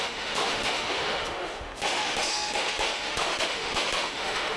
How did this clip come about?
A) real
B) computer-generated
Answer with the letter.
B